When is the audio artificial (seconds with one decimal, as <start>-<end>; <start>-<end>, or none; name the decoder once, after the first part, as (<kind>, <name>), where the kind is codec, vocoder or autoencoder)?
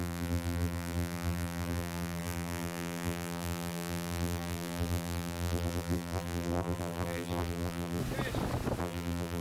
0.0-8.0 (vocoder, BigVGAN v2); 8.8-9.4